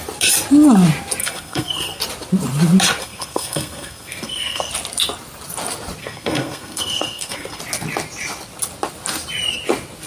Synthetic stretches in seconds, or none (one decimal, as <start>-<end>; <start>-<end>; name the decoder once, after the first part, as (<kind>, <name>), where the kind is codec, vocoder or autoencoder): 1.2-2.0 (codec, SNAC); 3.0-4.7; 6.0-7.6